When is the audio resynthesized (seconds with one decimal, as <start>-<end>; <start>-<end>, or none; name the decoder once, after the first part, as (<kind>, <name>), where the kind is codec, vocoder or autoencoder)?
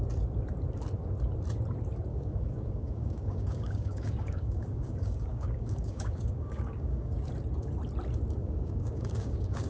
2.1-7.3 (codec, DAC); 8.4-9.7